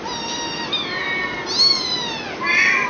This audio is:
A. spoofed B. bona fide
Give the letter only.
B